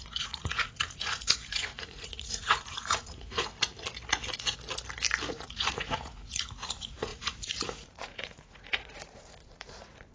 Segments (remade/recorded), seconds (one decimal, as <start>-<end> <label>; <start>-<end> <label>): 0.0-3.5 remade; 3.5-5.3 recorded; 5.3-10.1 remade